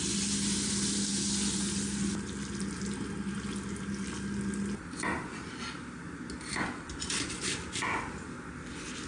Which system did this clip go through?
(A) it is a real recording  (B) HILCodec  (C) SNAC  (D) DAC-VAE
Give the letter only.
A